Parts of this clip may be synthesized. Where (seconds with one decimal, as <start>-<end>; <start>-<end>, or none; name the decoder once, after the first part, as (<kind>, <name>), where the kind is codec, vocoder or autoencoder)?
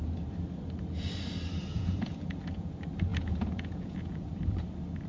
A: 1.7-2.7 (vocoder, Vocos); 3.1-4.3